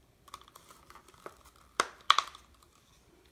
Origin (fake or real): fake